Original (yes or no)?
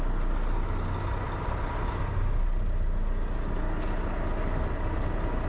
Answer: yes